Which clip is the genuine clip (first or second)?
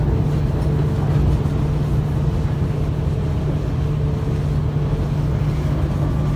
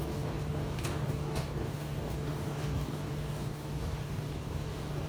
first